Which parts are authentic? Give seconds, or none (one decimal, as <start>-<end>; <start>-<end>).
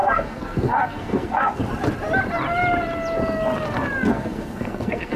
1.6-4.1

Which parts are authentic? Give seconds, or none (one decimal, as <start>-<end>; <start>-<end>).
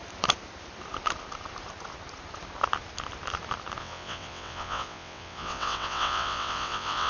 0.0-3.8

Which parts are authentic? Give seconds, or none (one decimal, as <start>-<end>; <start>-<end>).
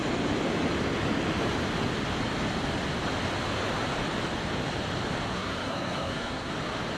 0.0-5.3; 6.5-7.0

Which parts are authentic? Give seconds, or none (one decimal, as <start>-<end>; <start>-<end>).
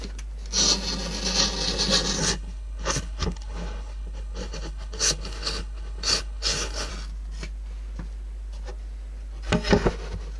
0.0-2.2; 6.9-10.4